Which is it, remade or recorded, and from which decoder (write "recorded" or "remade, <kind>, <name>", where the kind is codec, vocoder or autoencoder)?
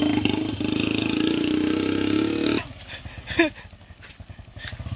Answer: recorded